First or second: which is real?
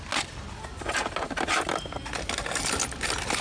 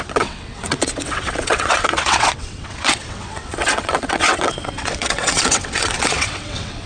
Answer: first